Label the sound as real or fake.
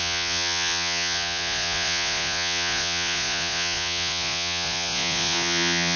fake